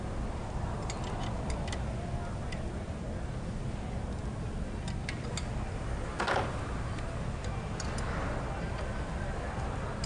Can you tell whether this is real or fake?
real